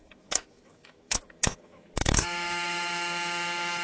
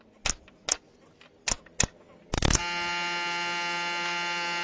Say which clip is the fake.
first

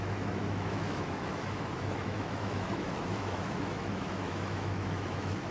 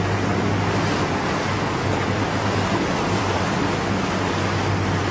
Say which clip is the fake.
first